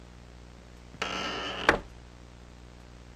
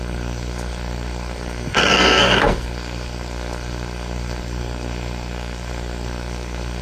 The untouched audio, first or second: first